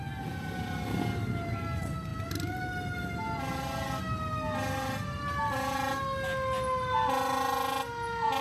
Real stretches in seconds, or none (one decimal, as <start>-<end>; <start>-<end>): 0.0-8.4